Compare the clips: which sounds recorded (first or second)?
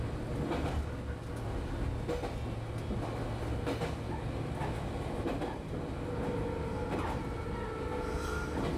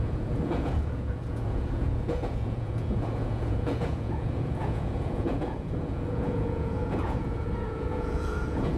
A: first